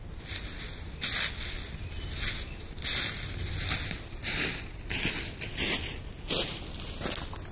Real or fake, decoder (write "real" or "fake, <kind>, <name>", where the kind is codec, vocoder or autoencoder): real